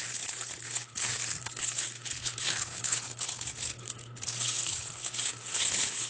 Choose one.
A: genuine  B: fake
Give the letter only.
B